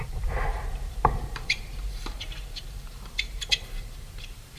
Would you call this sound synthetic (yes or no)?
yes